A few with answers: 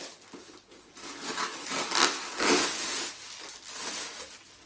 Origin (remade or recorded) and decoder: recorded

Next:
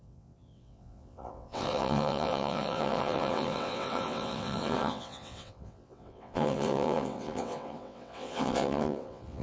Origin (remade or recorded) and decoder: remade, vocoder, WaveNeXt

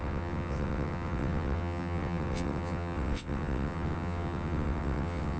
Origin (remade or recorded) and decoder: remade, vocoder, WaveNeXt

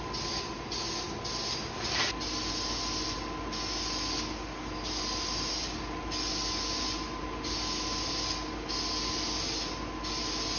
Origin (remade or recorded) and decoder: recorded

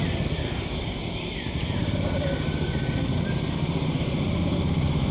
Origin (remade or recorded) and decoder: recorded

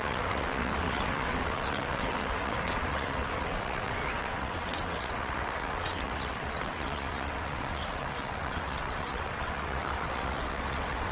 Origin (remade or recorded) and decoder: remade, vocoder, WaveNeXt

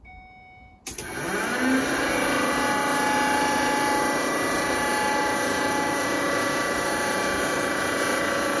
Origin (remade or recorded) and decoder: recorded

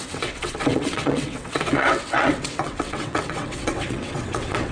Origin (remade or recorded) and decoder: remade, vocoder, WaveNeXt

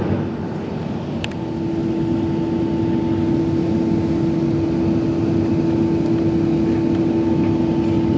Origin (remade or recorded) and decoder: recorded